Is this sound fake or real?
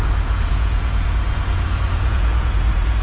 fake